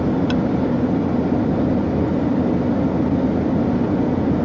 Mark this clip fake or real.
real